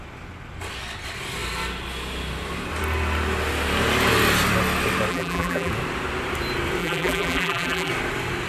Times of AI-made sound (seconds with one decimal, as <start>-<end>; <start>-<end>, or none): 5.1-5.7; 6.8-7.9